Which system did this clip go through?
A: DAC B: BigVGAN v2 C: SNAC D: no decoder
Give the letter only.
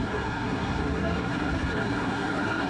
C